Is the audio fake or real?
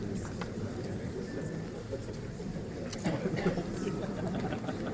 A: fake